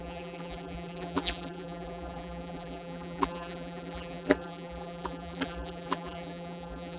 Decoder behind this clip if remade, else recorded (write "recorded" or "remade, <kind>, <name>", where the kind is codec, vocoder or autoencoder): remade, vocoder, BigVGAN v2